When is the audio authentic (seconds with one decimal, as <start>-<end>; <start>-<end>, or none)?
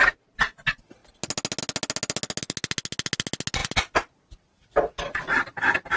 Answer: 0.0-6.0